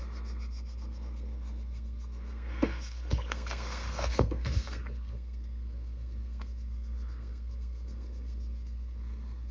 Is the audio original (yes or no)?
no